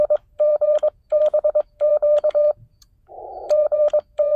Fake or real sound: fake